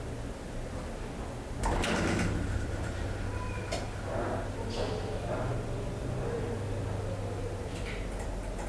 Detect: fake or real real